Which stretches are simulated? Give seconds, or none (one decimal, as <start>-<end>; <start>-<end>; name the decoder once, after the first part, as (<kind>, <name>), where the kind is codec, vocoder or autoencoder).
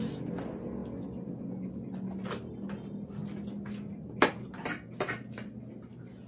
none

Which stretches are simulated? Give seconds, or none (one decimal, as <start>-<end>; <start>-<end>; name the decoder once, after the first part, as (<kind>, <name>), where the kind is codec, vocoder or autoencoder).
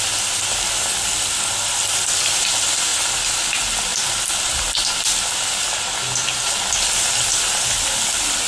2.9-3.5 (vocoder, BigVGAN v2); 3.9-4.6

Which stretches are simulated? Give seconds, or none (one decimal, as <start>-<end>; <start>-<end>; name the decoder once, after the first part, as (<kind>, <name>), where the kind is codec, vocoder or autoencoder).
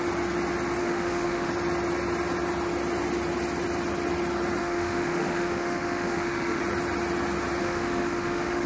0.8-1.5 (autoencoder, DAC-VAE); 4.6-6.6; 7.6-8.7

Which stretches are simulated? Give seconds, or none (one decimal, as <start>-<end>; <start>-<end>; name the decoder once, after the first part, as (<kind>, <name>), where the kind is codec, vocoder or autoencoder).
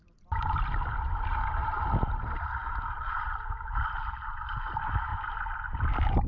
none